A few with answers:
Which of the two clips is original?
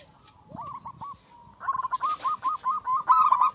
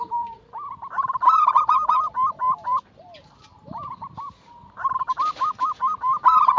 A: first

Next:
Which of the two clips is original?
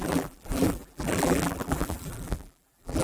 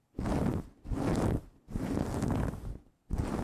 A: second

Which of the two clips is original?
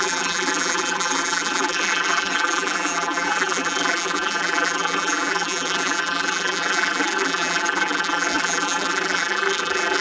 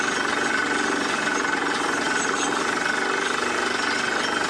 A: second